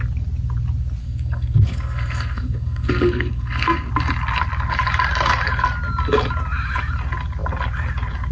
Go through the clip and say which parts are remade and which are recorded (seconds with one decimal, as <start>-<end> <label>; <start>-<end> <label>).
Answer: 0.0-1.0 recorded; 1.0-3.9 remade; 3.9-8.3 recorded

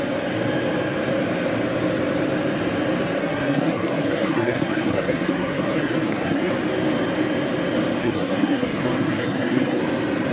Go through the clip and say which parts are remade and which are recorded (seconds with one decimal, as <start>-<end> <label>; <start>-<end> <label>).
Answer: 0.0-3.2 recorded; 3.2-6.5 remade; 6.5-8.0 recorded; 8.0-9.8 remade; 9.8-10.3 recorded

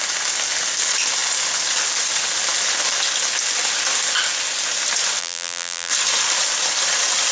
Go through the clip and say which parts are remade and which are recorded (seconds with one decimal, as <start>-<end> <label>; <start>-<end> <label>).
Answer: 0.0-5.2 recorded; 5.2-5.9 remade; 5.9-7.3 recorded

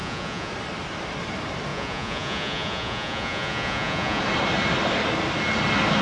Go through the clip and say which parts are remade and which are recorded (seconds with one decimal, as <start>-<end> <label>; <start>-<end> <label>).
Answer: 0.0-0.5 remade; 0.5-1.7 recorded; 1.7-4.2 remade; 4.2-6.0 recorded

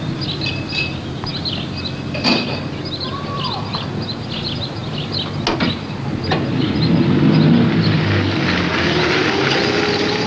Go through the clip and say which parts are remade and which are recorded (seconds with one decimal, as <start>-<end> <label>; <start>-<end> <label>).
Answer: 0.0-10.3 recorded

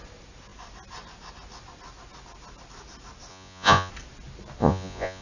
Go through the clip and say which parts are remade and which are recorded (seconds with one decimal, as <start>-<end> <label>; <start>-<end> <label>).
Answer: 0.0-3.3 recorded; 3.3-3.9 remade; 3.9-4.6 recorded; 4.6-5.2 remade

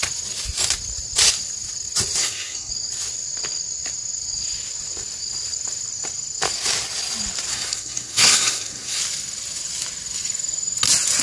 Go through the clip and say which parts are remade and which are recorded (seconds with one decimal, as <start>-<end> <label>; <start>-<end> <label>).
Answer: 0.0-2.2 recorded; 2.2-2.7 remade; 2.7-7.5 recorded; 7.5-9.0 remade; 9.0-11.2 recorded

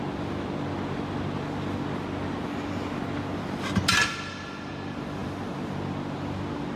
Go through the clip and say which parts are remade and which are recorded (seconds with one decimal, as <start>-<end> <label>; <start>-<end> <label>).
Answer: 0.0-6.8 recorded